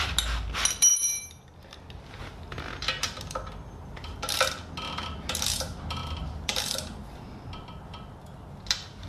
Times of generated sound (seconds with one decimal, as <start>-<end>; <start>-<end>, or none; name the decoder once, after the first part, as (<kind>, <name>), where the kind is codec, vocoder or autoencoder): 6.0-7.3 (vocoder, BigVGAN v2)